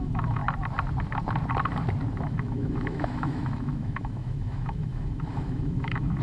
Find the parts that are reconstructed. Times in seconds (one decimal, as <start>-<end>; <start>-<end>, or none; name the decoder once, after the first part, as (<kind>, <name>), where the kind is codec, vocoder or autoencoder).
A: 0.0-0.4 (autoencoder, DAC-VAE); 2.2-6.2